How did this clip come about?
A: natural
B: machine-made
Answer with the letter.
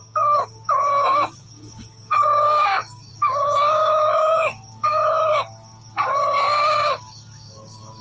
B